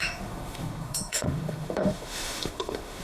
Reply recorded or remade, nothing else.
remade